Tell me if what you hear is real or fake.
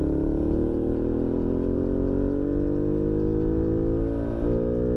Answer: real